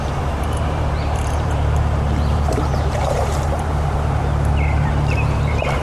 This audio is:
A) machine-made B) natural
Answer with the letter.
A